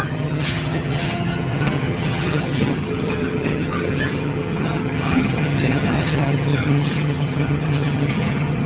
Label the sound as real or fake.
fake